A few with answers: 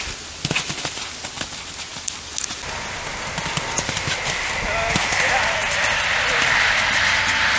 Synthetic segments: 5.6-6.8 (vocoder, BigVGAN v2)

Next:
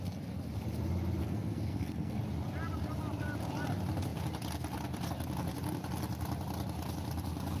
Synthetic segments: 1.2-2.2 (codec, SNAC)

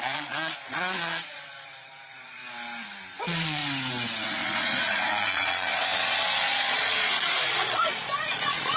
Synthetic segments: 0.0-2.4 (vocoder, Vocos); 3.2-3.6; 4.3-8.8

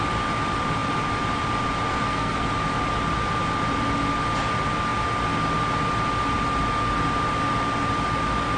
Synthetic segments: 1.9-2.5 (codec, SNAC)

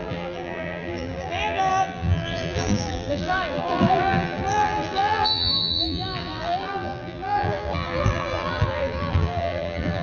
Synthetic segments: 0.0-10.0 (vocoder, BigVGAN v2)

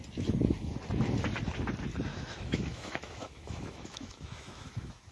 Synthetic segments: 2.1-5.1 (autoencoder, DAC-VAE)